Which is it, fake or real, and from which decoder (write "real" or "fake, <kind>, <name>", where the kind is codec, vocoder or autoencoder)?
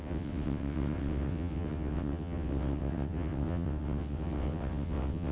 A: fake, vocoder, WaveNeXt